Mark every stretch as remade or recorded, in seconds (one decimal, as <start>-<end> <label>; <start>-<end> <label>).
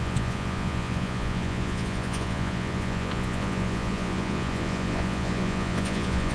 0.0-6.3 remade